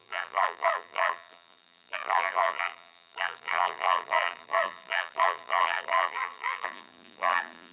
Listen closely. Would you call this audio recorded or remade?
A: remade